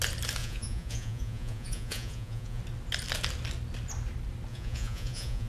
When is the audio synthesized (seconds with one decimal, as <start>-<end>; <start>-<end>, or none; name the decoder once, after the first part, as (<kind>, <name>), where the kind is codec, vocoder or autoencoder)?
0.4-2.6 (vocoder, Vocos); 4.5-5.5